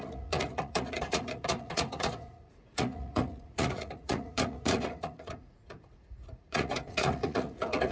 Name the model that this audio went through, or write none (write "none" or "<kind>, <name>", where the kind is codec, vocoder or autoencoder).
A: vocoder, Vocos